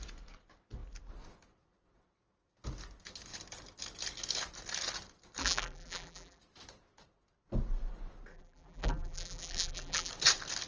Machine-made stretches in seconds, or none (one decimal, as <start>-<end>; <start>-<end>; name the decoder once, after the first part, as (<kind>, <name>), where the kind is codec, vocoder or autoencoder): 5.4-6.4 (vocoder, BigVGAN v2); 8.3-10.1